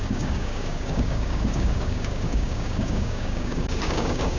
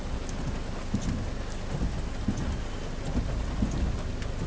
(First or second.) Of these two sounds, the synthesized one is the first